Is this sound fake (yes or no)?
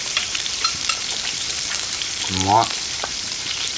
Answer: yes